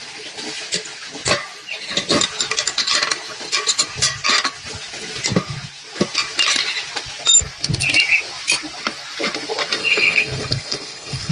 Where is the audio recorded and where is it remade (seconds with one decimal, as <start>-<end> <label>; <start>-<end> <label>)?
0.0-9.8 recorded; 9.8-11.3 remade